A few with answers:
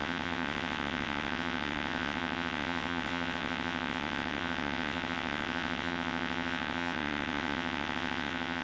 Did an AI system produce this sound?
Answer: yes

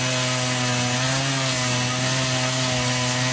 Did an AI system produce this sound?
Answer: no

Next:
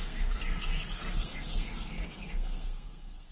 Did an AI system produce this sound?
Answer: yes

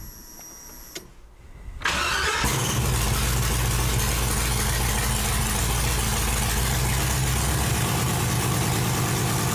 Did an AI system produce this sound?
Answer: no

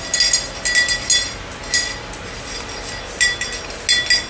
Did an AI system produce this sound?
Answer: no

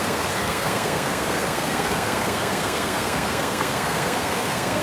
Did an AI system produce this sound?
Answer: yes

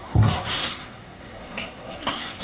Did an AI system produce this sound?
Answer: yes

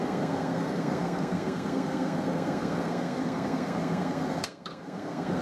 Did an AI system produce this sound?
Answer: yes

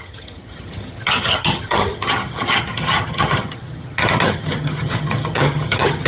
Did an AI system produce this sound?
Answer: yes